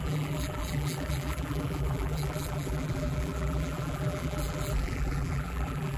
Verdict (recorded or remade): remade